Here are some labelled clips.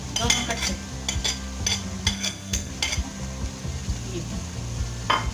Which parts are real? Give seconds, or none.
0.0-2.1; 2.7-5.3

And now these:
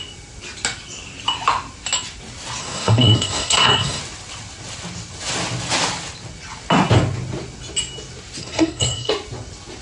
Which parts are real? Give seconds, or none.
0.0-2.6; 4.0-8.4; 9.1-9.8

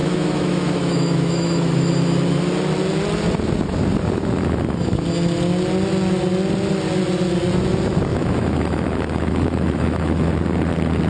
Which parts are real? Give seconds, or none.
1.9-8.1; 10.3-11.1

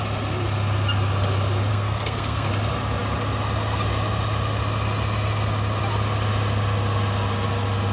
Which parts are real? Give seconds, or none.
0.0-1.7; 2.5-7.9

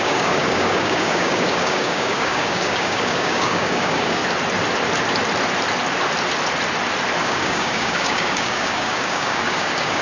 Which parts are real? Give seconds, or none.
4.2-7.2

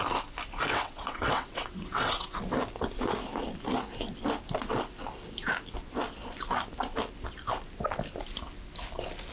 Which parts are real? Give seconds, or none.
0.0-0.7; 2.4-9.3

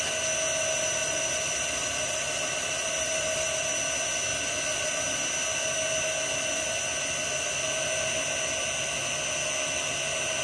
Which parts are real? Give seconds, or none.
0.0-1.0; 3.8-4.3; 5.0-10.4